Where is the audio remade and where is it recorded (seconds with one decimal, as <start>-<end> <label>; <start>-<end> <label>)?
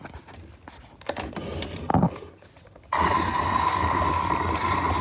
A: 0.0-5.0 recorded